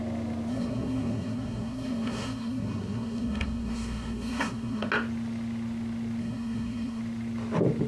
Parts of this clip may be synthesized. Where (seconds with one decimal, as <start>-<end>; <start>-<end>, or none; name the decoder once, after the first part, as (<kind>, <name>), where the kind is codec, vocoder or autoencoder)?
0.5-4.9 (codec, SNAC); 6.2-7.0